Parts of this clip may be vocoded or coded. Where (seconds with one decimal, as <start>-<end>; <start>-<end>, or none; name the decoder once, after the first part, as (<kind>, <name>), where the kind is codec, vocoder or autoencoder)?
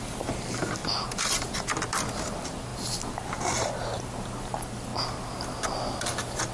none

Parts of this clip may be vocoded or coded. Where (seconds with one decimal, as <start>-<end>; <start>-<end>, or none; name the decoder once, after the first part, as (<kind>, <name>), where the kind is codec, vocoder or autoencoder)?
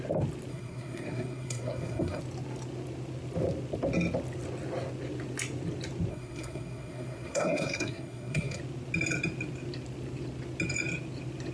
0.5-2.2 (codec, SNAC); 6.1-8.6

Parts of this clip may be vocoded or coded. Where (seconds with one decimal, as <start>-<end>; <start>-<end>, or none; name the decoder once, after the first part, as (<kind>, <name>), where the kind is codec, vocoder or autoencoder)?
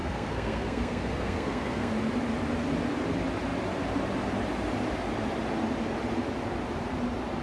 0.0-1.9 (codec, SNAC)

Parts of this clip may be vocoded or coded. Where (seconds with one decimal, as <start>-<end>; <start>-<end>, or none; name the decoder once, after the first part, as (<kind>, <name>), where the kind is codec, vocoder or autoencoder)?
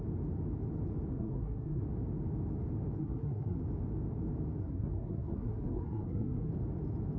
1.1-1.8 (codec, SNAC); 3.0-3.6; 4.6-6.5